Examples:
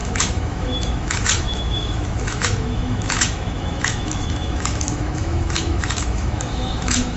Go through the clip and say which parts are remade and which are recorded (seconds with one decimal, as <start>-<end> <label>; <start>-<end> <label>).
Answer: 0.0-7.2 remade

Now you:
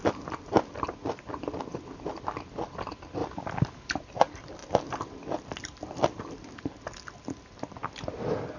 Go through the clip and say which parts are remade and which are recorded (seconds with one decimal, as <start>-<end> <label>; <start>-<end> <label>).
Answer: 0.0-8.6 recorded

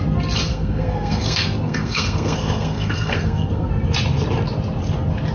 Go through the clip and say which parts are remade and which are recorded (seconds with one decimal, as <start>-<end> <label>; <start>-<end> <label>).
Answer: 0.0-0.5 recorded; 0.5-3.7 remade; 3.7-5.3 recorded